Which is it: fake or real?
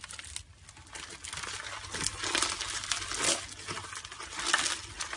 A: real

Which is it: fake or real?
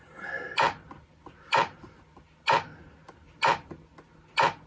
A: real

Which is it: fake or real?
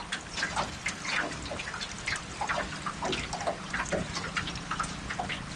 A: real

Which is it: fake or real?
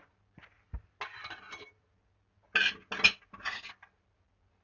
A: real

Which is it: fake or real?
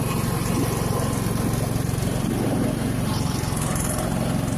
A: real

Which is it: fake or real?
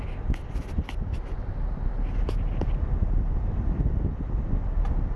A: real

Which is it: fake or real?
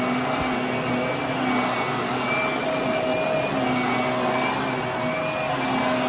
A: real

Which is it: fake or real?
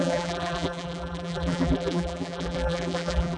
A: fake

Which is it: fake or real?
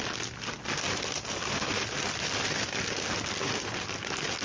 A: real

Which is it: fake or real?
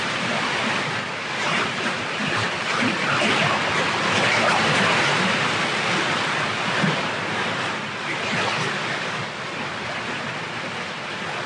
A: real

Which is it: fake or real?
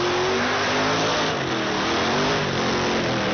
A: real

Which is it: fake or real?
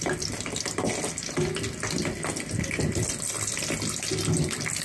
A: real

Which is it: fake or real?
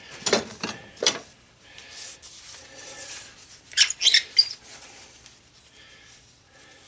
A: fake